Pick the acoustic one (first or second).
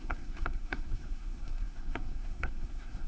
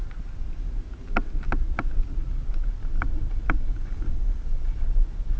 second